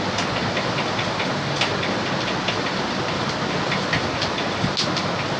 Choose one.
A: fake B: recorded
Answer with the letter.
B